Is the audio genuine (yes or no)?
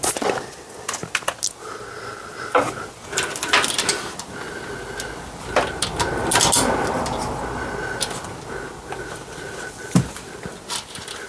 yes